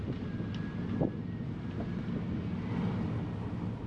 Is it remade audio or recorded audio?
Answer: recorded